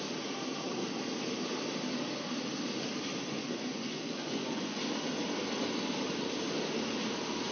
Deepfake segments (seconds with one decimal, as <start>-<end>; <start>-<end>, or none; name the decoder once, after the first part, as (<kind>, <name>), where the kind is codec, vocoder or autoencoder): 3.2-4.8 (vocoder, Vocos)